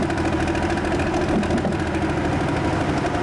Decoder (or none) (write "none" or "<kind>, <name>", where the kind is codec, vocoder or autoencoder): none